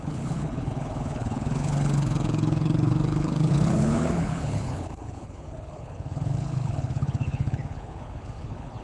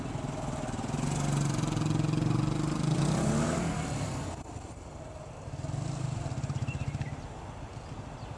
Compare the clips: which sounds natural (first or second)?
second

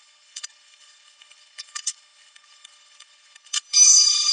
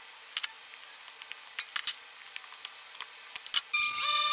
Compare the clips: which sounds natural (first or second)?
second